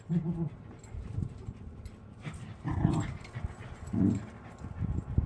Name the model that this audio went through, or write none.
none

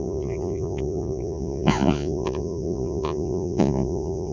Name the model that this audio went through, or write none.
vocoder, Vocos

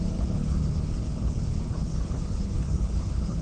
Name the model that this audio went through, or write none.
codec, HILCodec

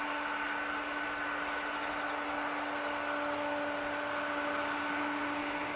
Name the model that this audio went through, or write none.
none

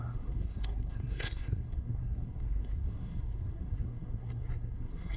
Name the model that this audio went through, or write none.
codec, SNAC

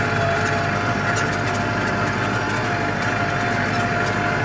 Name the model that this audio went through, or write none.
none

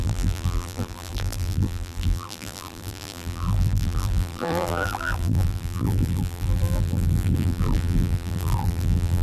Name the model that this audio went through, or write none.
vocoder, BigVGAN v2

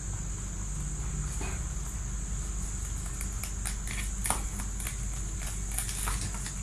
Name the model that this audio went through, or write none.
none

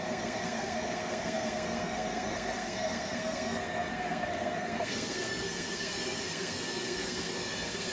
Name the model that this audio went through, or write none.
codec, SNAC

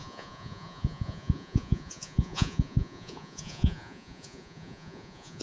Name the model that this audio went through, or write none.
vocoder, Vocos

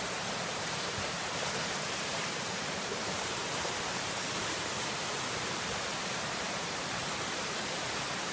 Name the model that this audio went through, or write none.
vocoder, BigVGAN v2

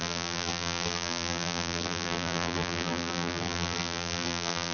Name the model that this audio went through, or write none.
vocoder, BigVGAN v2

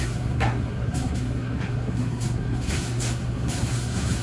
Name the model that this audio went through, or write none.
codec, SNAC